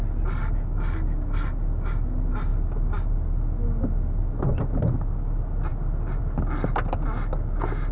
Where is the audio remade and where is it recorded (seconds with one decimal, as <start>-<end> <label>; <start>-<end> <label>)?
0.0-7.9 recorded